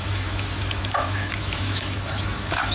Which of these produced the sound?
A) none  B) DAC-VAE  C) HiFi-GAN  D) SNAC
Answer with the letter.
B